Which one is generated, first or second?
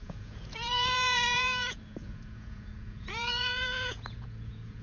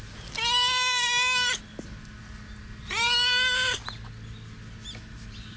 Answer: first